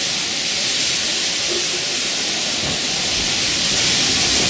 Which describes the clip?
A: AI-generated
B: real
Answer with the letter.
B